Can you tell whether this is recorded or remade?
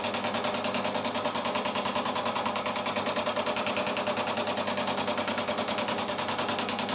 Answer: recorded